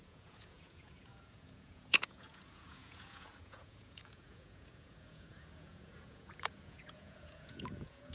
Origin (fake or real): fake